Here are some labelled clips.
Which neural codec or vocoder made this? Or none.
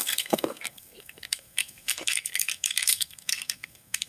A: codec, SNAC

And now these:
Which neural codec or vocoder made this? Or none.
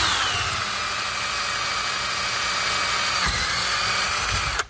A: none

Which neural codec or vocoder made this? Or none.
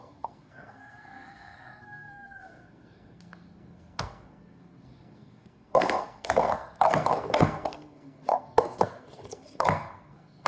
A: codec, SNAC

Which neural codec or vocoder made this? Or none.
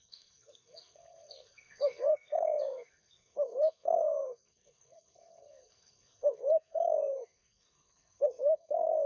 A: codec, SNAC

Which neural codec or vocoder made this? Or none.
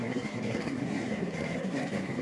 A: codec, SNAC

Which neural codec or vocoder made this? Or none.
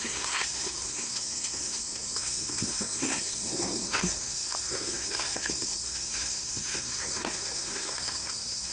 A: codec, SNAC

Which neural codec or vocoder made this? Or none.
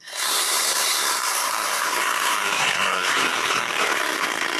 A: codec, SNAC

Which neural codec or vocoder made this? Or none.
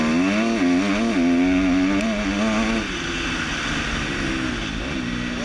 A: none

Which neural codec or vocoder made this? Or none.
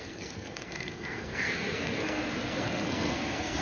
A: codec, SNAC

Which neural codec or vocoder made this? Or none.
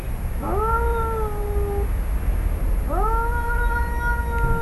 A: none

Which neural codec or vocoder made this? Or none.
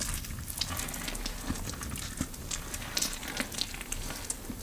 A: none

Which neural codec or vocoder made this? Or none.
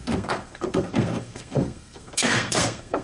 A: codec, SNAC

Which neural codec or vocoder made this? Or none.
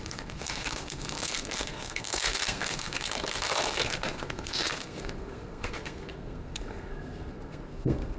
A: codec, SNAC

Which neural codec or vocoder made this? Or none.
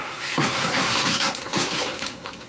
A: codec, SNAC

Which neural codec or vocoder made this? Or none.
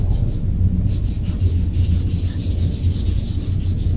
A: none